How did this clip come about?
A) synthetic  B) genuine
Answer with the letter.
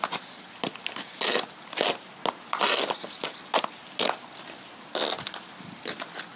B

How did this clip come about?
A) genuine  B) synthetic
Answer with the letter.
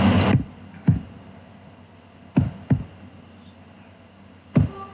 A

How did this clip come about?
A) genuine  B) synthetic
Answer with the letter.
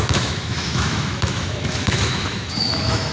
B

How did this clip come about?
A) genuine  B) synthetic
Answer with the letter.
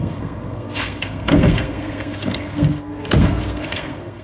B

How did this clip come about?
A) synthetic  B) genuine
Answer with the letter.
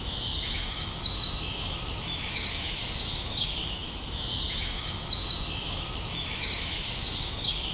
A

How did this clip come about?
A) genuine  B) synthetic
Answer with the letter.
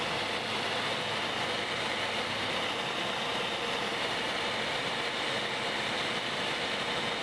A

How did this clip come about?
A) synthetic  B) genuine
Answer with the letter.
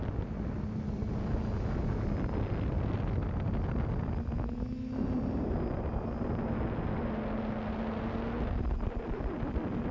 B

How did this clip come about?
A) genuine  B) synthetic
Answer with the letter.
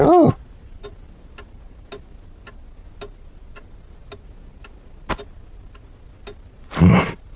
A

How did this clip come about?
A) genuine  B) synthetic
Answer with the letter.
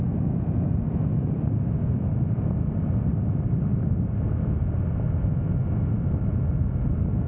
A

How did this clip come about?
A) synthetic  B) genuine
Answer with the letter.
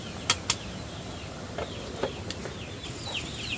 B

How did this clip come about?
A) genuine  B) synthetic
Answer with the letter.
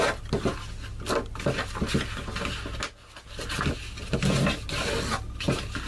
A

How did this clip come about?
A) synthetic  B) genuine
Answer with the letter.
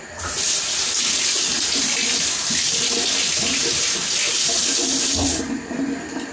B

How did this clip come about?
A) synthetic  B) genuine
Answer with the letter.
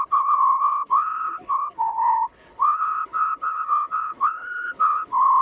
A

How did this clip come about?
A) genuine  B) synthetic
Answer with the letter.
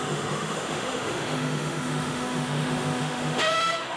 B